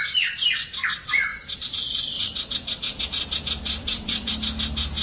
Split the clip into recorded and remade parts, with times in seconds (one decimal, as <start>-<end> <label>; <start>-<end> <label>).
0.0-3.8 recorded; 3.8-4.3 remade; 4.3-5.0 recorded